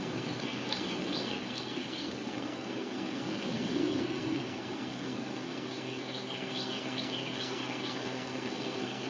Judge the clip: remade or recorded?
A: remade